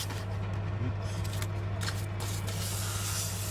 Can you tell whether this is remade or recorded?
recorded